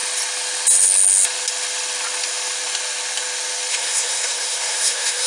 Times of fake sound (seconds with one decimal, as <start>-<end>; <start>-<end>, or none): 3.7-5.3